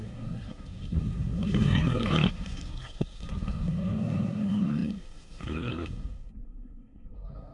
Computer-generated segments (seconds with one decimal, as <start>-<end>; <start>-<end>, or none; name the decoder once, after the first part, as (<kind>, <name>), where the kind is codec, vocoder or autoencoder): 0.0-7.5 (codec, SNAC)